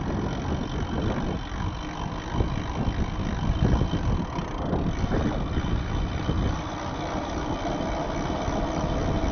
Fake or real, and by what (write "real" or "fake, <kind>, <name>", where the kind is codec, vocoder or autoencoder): real